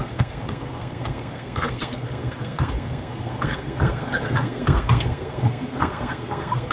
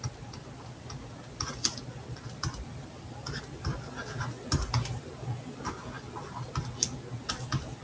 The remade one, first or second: first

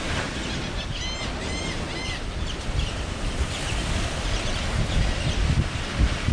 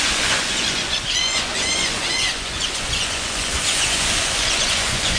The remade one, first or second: second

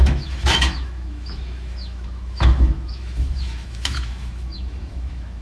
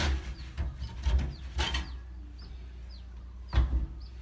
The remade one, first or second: first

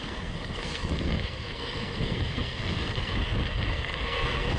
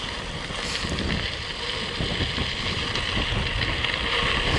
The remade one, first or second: first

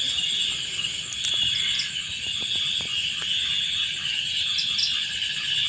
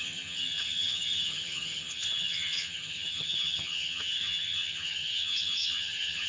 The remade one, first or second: second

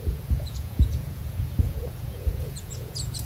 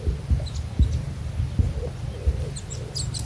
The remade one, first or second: first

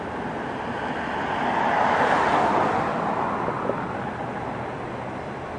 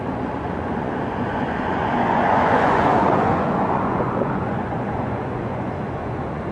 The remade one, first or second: second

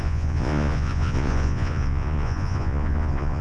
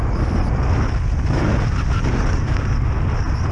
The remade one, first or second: first